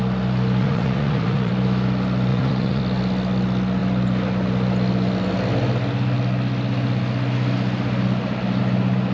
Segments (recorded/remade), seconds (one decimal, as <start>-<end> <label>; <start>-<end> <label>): 0.0-0.6 recorded; 0.6-1.5 remade; 1.5-2.3 recorded; 2.3-2.8 remade; 2.8-9.1 recorded